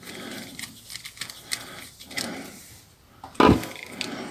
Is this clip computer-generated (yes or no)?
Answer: no